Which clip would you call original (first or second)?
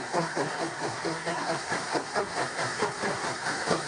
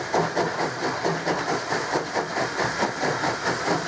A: second